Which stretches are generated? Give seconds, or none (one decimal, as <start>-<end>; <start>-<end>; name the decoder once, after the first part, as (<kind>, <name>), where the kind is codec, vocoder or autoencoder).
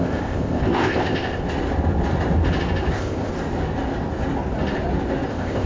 0.0-1.4 (codec, ZipCodec); 2.9-3.3; 5.3-5.7